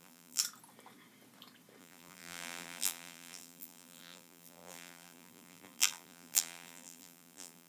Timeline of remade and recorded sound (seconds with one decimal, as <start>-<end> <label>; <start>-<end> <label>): 0.0-0.4 remade; 0.4-1.8 recorded; 1.8-7.7 remade